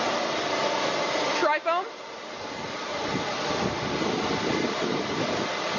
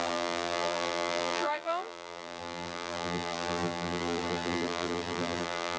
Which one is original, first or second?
first